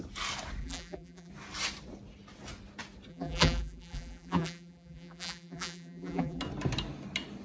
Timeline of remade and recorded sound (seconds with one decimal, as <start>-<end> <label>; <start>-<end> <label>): 0.0-0.6 recorded; 0.6-1.3 remade; 1.3-3.1 recorded; 3.1-6.4 remade; 6.4-7.4 recorded